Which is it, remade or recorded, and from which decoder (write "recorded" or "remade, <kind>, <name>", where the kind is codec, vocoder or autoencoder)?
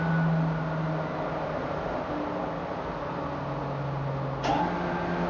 recorded